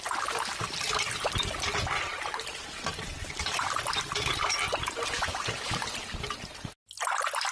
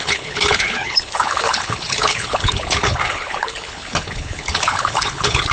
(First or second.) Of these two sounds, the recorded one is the first